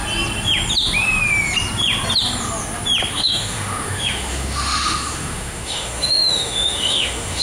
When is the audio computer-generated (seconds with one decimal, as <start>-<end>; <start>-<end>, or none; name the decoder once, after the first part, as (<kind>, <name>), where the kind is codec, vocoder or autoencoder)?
3.1-7.4 (autoencoder, DAC-VAE)